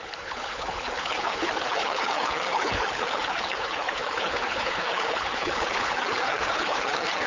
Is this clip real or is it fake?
fake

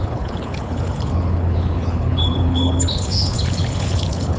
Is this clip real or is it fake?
fake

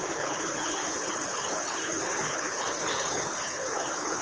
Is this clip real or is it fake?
fake